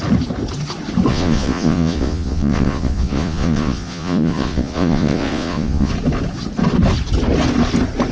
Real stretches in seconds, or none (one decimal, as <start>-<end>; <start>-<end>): 0.0-1.1; 5.9-8.1